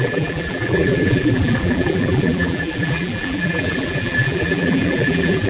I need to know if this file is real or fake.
fake